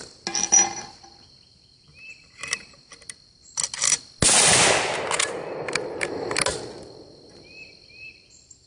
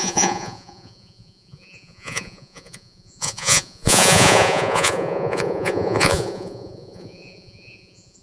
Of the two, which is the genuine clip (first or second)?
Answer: first